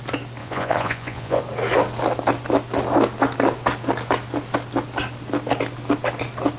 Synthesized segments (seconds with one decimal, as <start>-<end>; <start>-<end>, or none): 0.4-1.4